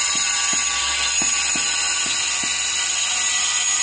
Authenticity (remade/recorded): recorded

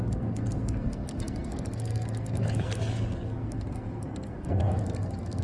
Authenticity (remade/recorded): remade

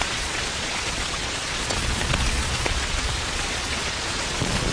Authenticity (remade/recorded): remade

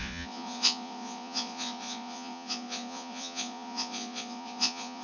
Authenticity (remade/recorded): remade